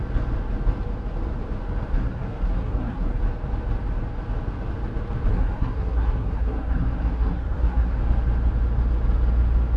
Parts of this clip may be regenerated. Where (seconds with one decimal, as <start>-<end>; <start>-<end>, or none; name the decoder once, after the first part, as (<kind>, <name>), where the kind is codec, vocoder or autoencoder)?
1.9-3.2 (codec, SNAC); 5.3-8.0